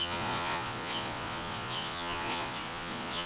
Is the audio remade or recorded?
remade